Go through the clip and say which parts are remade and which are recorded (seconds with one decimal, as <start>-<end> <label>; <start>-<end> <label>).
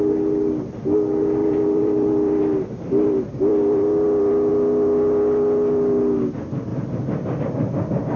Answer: 0.0-1.4 recorded; 1.4-4.5 remade; 4.5-8.2 recorded